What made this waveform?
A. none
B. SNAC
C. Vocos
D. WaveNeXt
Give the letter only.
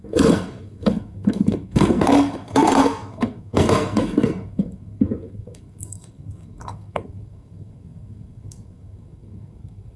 B